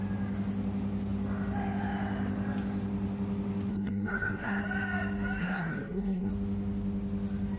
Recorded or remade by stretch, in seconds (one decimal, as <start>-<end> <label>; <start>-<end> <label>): 0.0-3.7 recorded; 3.7-4.6 remade; 4.6-5.4 recorded; 5.4-6.3 remade; 6.3-7.6 recorded